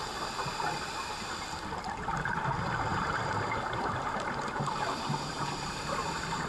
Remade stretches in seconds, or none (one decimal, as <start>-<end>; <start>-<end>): 2.9-6.1